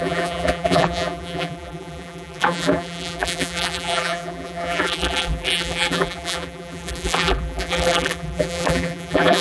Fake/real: fake